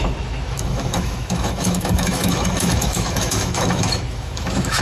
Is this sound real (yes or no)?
no